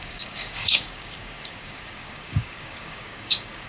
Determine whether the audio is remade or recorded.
remade